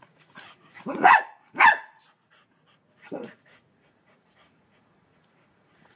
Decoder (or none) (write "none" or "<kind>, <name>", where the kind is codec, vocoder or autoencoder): vocoder, Vocos